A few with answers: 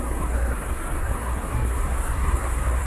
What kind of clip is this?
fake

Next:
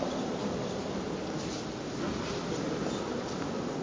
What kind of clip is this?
real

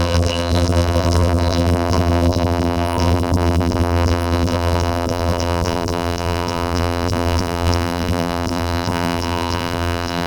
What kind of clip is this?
fake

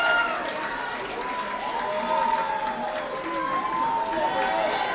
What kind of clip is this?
real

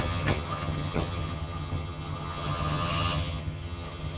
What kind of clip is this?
fake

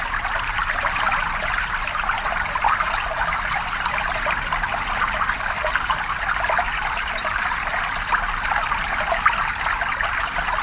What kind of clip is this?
real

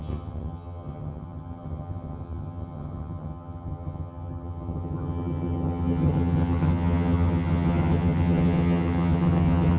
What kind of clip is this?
fake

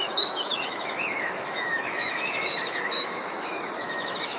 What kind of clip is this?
fake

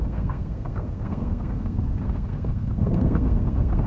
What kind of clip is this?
fake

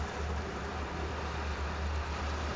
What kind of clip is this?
real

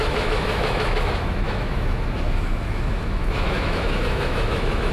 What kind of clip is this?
fake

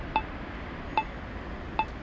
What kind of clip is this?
real